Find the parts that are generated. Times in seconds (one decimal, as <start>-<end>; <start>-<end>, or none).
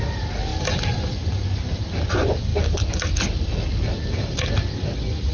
none